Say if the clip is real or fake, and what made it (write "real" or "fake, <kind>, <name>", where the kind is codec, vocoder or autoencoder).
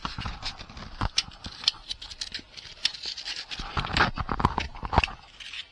real